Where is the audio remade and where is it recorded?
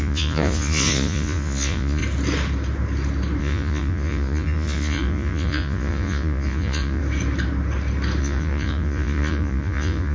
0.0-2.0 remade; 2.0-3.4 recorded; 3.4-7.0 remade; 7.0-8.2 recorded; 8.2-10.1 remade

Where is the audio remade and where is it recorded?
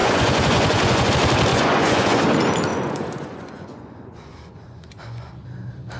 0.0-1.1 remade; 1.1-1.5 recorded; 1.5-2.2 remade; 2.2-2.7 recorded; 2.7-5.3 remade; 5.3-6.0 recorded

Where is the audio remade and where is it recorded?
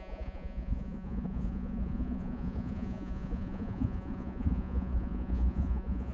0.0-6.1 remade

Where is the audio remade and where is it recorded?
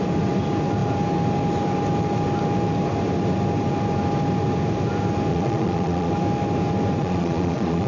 0.0-5.3 recorded; 5.3-6.1 remade; 6.1-7.0 recorded; 7.0-7.9 remade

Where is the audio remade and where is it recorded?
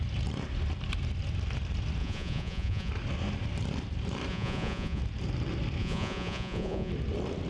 0.0-2.0 recorded; 2.0-2.9 remade; 2.9-4.3 recorded; 4.3-5.0 remade; 5.0-5.8 recorded; 5.8-6.9 remade; 6.9-7.5 recorded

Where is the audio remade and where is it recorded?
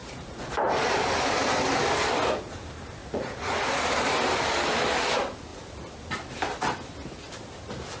0.0-0.5 remade; 0.5-3.0 recorded; 3.0-3.8 remade; 3.8-8.0 recorded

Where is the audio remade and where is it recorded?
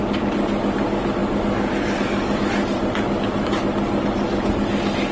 0.0-5.1 recorded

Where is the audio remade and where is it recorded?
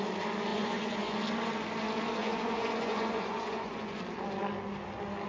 0.0-0.5 recorded; 0.5-1.2 remade; 1.2-2.2 recorded; 2.2-4.0 remade; 4.0-5.3 recorded